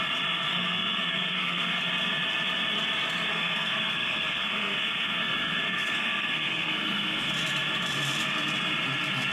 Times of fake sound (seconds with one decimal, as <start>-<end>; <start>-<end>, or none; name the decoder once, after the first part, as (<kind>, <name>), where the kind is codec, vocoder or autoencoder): 0.5-1.8 (codec, SNAC); 3.3-7.3